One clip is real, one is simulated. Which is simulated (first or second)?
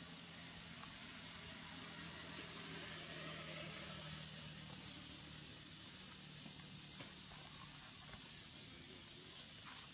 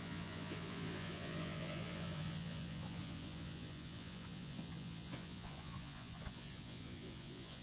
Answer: second